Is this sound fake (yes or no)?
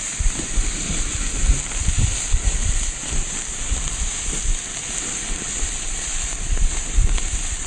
no